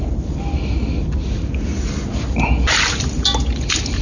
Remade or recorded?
recorded